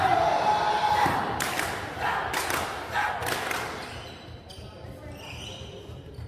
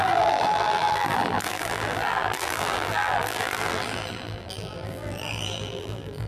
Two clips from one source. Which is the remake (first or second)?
second